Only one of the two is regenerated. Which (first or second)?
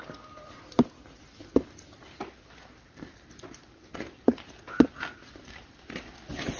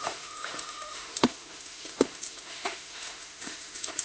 second